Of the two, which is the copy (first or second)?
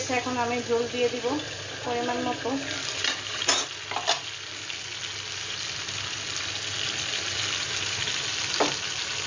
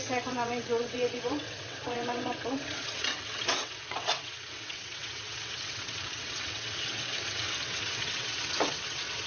second